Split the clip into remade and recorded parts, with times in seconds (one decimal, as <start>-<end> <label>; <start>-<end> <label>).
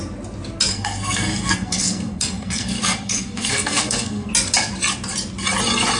0.0-0.7 recorded; 0.7-4.3 remade; 4.3-6.0 recorded